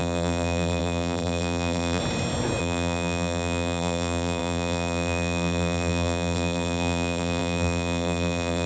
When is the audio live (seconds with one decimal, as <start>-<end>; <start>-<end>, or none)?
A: 2.0-2.6